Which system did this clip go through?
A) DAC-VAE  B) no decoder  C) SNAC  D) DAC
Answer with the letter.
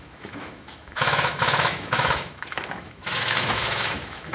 A